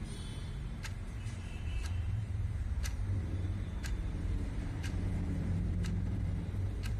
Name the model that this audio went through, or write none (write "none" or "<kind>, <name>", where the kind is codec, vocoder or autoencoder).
vocoder, BigVGAN v2